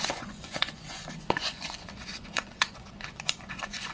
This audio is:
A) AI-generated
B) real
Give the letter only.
A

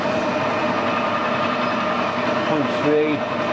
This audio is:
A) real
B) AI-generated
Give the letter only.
A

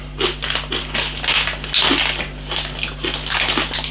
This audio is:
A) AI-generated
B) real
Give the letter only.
B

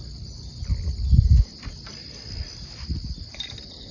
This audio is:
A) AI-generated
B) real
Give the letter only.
B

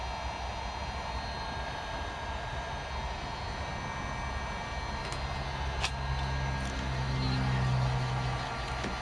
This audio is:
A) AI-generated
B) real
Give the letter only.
B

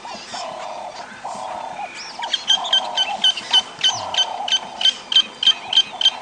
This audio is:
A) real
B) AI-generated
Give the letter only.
A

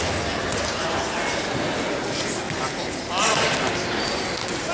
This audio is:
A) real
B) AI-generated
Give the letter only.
A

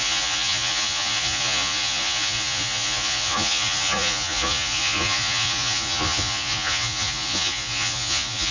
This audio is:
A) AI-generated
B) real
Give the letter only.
A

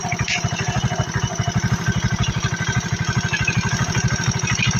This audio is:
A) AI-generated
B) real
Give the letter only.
B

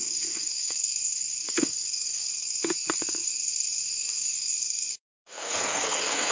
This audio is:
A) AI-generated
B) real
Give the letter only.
A